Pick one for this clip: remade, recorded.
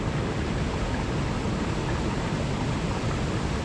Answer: recorded